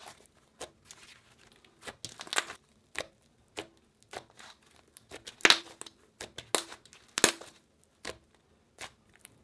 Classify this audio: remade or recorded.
recorded